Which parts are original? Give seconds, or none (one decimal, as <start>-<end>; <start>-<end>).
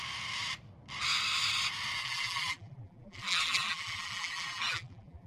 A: 0.0-2.0